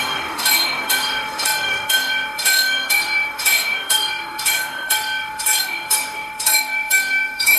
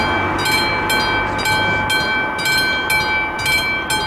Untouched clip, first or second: second